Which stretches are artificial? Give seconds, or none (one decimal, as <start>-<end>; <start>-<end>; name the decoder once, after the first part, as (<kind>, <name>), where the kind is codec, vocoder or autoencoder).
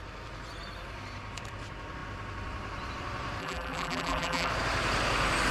3.4-4.5 (vocoder, BigVGAN v2)